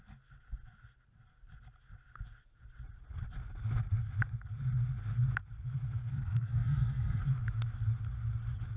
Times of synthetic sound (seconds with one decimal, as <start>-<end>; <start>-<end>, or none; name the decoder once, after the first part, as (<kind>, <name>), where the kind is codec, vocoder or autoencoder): 6.1-7.2 (codec, SNAC)